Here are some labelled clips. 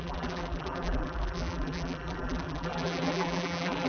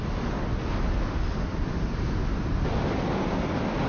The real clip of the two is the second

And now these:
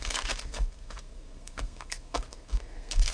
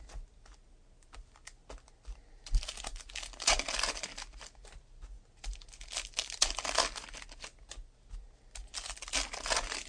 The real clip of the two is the second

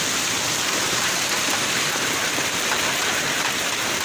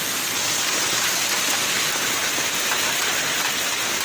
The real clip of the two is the second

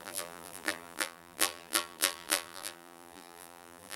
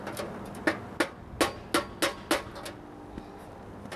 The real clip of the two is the second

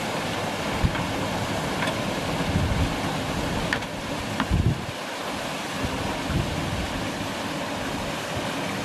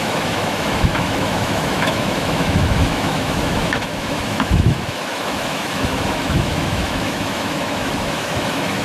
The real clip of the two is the first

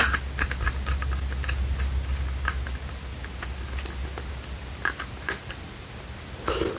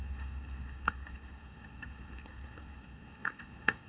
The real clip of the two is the first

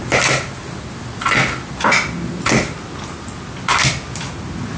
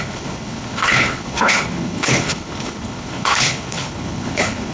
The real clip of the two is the first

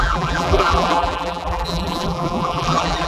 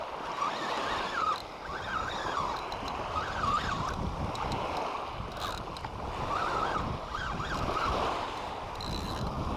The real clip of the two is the second